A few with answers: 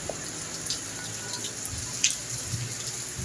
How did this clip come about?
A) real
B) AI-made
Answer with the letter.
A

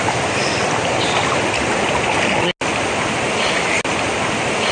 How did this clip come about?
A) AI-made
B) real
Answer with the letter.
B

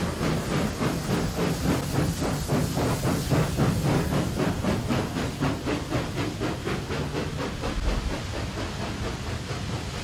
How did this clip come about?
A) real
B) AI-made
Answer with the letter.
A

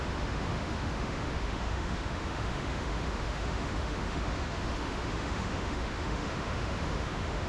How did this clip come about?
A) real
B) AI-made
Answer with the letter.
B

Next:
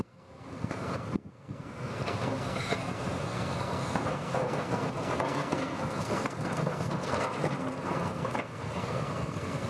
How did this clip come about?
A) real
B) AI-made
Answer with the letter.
B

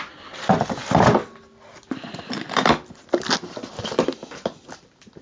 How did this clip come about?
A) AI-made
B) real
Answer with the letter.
B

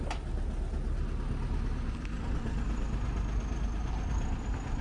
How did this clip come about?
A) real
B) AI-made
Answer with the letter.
A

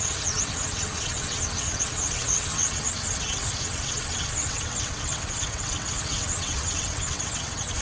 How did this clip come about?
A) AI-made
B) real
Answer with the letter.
A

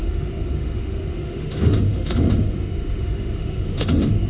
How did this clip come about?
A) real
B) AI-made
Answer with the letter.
B